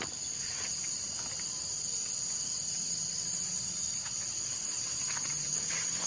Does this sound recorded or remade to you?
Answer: recorded